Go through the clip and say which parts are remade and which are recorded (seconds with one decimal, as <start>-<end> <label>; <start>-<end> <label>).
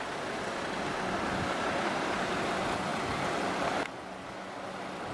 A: 0.0-5.1 recorded